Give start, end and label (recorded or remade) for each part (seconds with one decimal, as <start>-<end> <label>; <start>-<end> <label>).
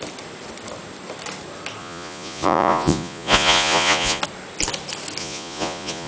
0.0-1.8 recorded; 1.8-4.2 remade; 4.2-5.2 recorded; 5.2-6.1 remade